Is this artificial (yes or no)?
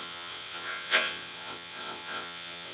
yes